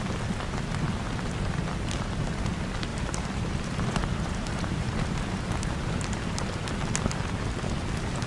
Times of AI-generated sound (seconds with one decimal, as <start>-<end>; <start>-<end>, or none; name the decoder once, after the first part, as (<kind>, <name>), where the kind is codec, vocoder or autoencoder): 2.9-5.4 (vocoder, BigVGAN v2)